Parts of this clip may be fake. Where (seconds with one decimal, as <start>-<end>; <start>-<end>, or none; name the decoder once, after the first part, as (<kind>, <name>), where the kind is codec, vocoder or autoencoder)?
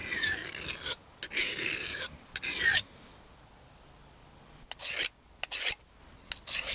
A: none